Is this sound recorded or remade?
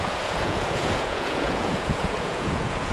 remade